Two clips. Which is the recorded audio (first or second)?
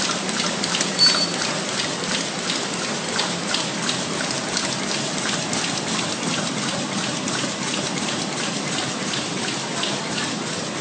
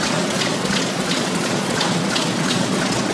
first